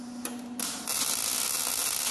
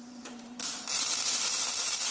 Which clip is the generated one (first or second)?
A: second